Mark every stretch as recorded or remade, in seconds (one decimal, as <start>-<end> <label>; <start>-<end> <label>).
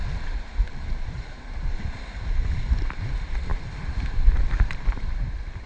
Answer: 0.0-1.4 remade; 1.4-5.7 recorded